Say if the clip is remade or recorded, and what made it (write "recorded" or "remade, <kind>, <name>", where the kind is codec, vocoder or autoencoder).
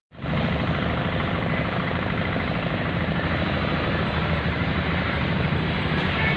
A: remade, vocoder, BigVGAN v2